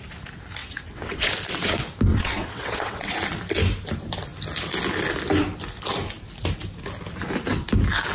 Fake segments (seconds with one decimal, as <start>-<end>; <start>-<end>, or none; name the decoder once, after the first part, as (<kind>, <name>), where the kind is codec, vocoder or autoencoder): 0.6-1.3 (vocoder, WaveNeXt); 2.1-3.2

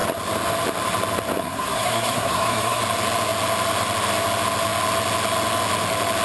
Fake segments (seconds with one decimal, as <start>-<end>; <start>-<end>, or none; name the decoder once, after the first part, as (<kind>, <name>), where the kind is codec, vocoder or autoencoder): 1.4-2.8 (codec, SNAC)